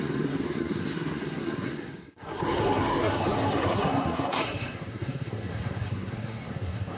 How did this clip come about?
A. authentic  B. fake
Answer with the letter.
B